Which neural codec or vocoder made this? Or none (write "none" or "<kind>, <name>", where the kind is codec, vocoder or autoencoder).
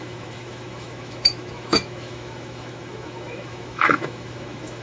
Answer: autoencoder, DAC-VAE